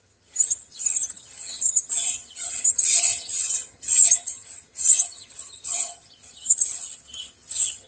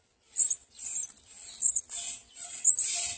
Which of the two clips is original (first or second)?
second